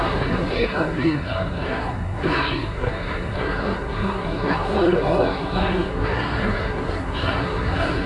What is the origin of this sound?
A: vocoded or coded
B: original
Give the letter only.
A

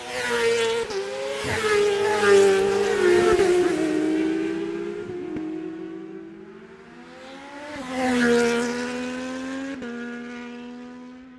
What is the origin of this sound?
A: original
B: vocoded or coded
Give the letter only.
A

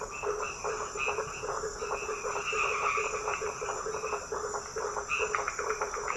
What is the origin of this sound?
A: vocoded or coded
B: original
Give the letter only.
B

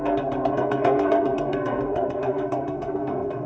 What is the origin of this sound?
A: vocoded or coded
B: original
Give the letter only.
A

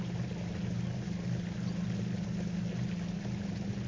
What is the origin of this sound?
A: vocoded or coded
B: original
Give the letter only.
B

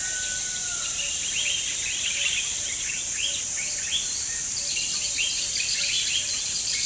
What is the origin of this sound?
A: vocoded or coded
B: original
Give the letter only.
B